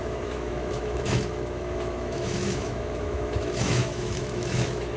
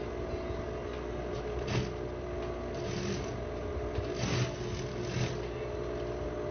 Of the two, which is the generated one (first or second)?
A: first